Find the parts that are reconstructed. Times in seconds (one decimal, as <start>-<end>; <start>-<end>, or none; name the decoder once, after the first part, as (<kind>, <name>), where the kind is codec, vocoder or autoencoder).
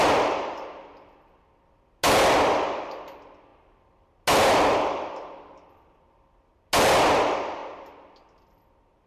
none